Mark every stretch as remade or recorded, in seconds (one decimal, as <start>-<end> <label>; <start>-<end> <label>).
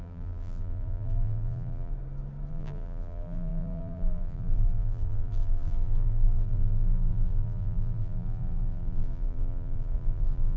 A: 0.0-1.9 remade; 1.9-2.5 recorded; 2.5-10.6 remade